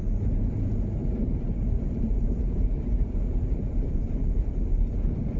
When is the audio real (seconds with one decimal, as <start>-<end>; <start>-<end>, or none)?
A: 0.0-1.0; 4.2-5.4